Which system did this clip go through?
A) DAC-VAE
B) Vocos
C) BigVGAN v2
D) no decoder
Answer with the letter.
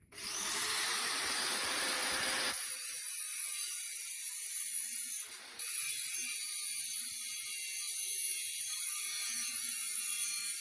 C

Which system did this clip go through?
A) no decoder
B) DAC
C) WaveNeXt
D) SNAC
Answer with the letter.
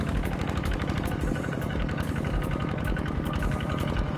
B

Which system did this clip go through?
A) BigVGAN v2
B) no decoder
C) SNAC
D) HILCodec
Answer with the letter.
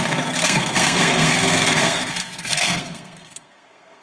C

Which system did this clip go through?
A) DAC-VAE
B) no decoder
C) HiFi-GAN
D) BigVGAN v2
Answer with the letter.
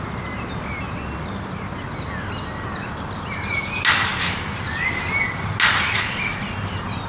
B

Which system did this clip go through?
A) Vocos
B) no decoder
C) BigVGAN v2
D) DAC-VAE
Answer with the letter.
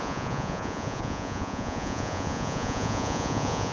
A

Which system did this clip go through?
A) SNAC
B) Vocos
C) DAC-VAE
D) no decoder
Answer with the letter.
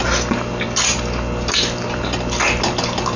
D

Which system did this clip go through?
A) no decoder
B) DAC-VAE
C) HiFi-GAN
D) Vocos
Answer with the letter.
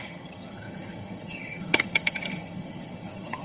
C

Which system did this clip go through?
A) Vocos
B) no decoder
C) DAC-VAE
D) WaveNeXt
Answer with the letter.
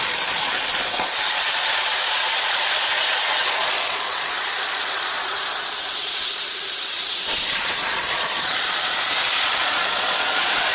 A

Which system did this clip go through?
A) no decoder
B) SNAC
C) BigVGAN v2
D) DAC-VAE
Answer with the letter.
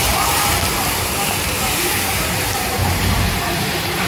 C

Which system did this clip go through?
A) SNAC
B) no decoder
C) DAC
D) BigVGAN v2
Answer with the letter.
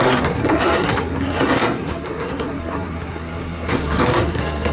A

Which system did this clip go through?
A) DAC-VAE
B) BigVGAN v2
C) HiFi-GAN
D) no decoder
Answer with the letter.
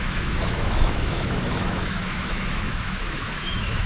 A